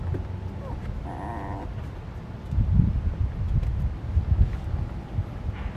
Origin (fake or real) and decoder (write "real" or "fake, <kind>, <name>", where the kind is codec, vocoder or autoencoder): real